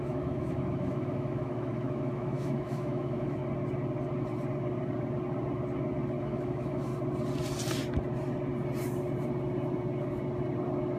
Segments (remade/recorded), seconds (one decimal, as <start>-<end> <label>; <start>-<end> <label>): 0.0-3.4 remade; 3.4-6.2 recorded; 6.2-6.9 remade; 6.9-11.0 recorded